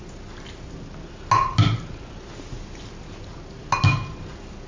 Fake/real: real